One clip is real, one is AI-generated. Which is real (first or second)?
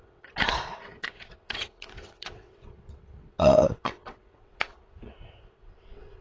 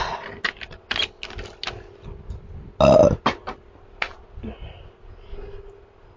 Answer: second